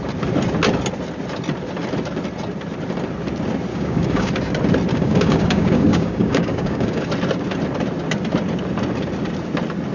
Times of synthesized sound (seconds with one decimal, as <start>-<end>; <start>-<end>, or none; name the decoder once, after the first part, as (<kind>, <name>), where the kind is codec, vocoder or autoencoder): 3.7-4.3 (codec, DAC); 4.9-7.1